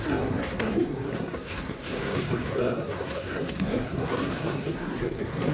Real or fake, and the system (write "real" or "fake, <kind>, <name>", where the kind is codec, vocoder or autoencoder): fake, codec, SNAC